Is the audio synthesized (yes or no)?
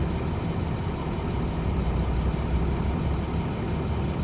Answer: no